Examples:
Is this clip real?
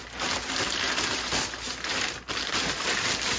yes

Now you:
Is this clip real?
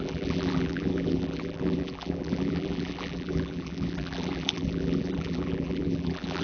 no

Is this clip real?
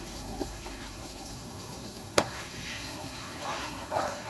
no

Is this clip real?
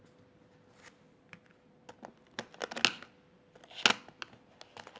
yes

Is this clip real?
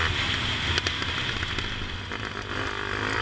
yes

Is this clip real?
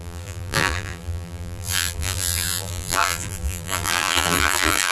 no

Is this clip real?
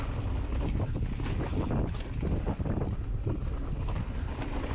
yes